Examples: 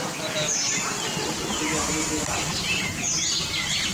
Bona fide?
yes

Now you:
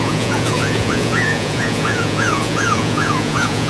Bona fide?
no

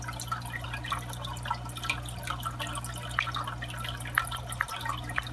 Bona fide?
yes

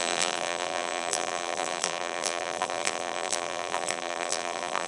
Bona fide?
no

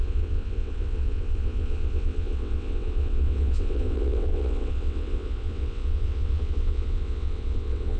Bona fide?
no